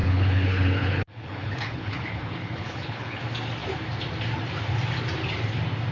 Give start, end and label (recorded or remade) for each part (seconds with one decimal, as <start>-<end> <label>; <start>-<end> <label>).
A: 0.0-3.2 remade; 3.2-5.9 recorded